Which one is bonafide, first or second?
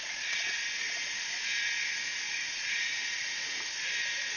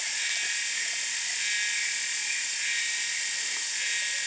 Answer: second